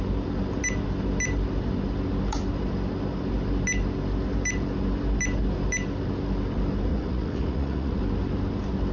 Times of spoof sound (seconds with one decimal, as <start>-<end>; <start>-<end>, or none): 6.9-8.0